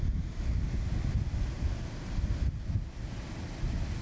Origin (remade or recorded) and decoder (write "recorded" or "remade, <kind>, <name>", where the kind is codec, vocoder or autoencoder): recorded